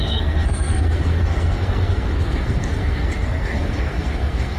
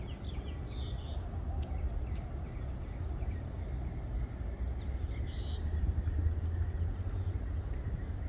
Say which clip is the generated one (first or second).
first